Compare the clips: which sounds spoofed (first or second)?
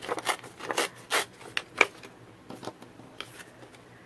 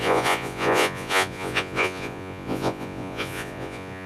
second